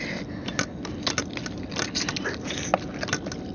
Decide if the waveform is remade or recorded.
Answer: recorded